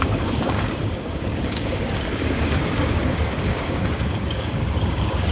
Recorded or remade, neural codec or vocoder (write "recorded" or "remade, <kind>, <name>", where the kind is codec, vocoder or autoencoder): remade, codec, DAC